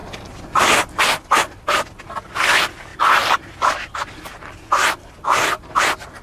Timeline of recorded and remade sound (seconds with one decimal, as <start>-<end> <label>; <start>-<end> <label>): 0.0-1.0 remade; 1.0-2.9 recorded; 2.9-5.5 remade; 5.5-6.2 recorded